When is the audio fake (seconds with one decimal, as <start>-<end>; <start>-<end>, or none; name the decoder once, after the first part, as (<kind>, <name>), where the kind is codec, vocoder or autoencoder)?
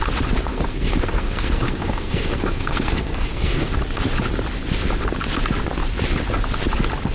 0.5-3.7 (codec, SNAC)